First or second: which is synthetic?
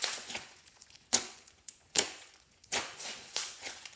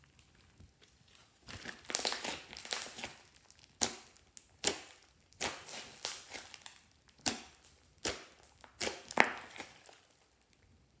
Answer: first